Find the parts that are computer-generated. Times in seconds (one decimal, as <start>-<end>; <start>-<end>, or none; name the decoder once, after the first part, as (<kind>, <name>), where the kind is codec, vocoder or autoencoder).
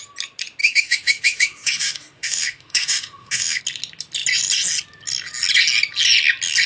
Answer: 0.6-3.6 (autoencoder, DAC-VAE)